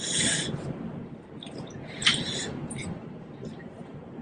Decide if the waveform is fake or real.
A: fake